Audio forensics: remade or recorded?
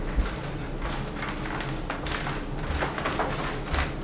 recorded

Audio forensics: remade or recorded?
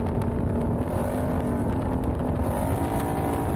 recorded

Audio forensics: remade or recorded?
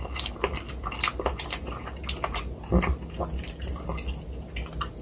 recorded